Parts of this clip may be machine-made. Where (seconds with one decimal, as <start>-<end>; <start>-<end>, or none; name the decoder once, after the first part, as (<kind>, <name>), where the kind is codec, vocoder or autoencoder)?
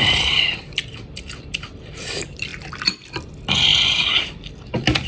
none